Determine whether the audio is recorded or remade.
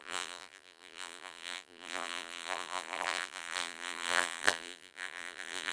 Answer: remade